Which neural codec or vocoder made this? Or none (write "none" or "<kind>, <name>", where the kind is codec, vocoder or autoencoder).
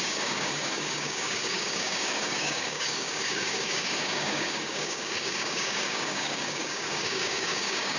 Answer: codec, DAC